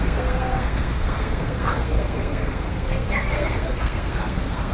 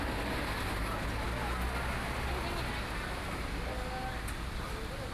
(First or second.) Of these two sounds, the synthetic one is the first